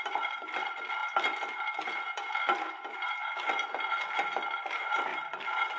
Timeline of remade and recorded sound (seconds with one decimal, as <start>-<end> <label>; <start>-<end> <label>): 0.0-1.0 remade; 1.0-2.1 recorded; 2.1-3.2 remade; 3.2-4.6 recorded; 4.6-5.1 remade; 5.1-5.8 recorded